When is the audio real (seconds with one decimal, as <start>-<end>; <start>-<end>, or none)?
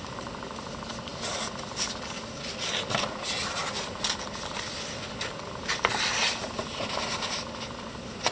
0.0-8.3